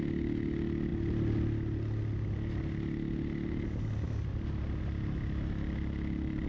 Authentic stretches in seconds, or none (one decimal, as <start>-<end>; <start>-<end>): 0.0-6.5